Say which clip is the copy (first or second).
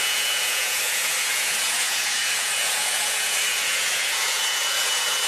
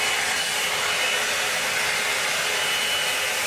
first